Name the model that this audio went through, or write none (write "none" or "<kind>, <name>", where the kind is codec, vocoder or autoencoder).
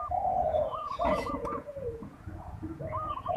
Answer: vocoder, Vocos